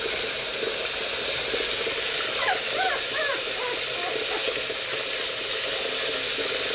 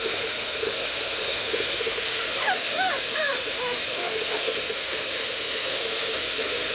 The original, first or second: first